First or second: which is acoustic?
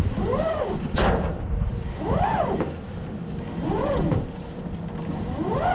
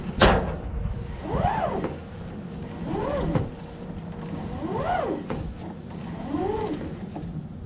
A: second